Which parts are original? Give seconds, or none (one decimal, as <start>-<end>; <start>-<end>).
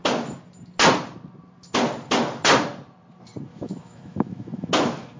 0.0-3.5; 4.7-5.2